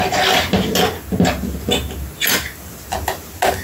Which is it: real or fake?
real